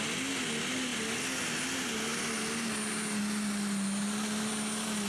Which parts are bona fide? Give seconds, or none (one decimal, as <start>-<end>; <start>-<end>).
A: 0.0-5.1